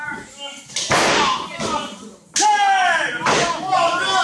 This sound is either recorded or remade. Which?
recorded